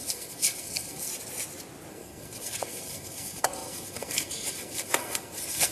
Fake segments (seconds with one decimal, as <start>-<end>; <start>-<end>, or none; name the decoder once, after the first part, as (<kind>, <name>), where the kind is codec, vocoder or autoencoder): 0.0-1.1 (codec, SNAC); 1.9-5.7